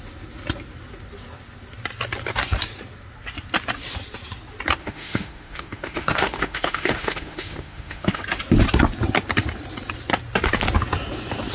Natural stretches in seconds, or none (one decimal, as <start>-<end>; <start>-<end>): 0.0-4.8; 8.2-11.5